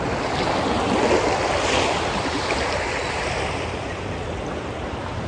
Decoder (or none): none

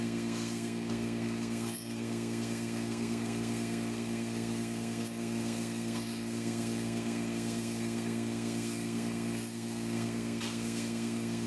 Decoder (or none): codec, SNAC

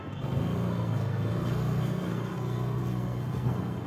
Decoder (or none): codec, SNAC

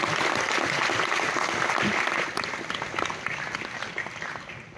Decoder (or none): none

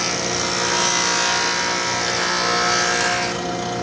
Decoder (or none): none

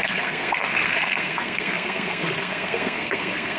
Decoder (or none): codec, SNAC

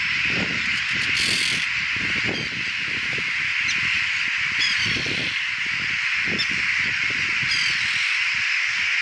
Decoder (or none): none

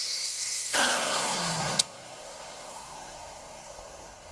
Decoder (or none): codec, SNAC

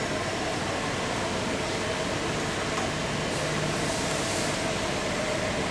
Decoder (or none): none